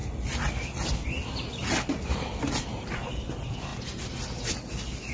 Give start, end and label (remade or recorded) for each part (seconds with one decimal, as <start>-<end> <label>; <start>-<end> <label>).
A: 0.0-5.1 recorded